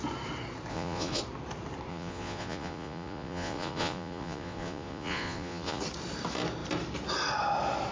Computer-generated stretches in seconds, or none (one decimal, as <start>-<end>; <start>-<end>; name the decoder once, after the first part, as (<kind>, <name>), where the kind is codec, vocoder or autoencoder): 0.7-1.2 (vocoder, Vocos); 1.9-5.8